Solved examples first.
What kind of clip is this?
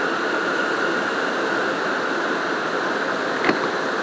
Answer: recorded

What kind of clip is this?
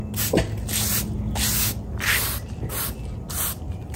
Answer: recorded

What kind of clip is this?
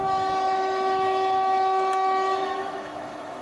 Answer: remade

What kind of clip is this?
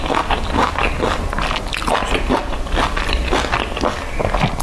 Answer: recorded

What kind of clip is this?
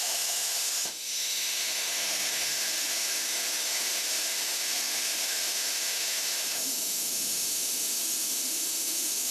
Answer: remade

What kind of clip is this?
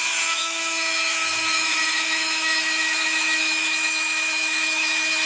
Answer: remade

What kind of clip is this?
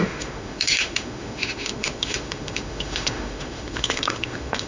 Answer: remade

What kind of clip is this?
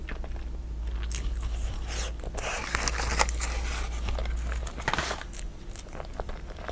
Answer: recorded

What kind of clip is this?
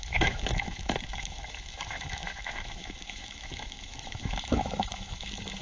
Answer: remade